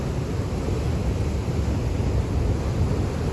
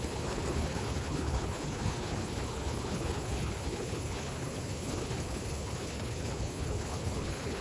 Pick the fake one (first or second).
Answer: second